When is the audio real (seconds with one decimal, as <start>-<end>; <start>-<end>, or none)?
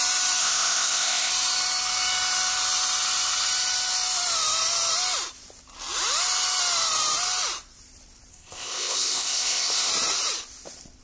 0.0-0.4; 1.3-8.3; 9.9-11.0